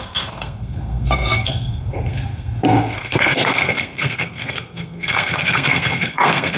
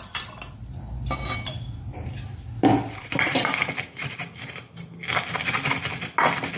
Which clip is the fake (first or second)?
first